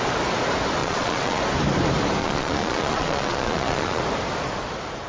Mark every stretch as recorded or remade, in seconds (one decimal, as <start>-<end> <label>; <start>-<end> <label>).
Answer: 0.0-0.8 recorded; 0.8-1.4 remade; 1.4-2.2 recorded; 2.2-4.0 remade; 4.0-5.1 recorded